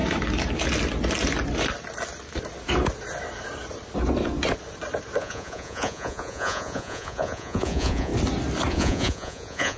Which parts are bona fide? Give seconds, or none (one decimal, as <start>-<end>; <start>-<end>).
0.0-5.2; 8.1-8.7